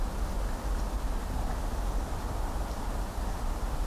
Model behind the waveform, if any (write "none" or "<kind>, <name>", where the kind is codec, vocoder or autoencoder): none